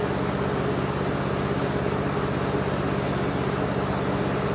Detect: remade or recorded recorded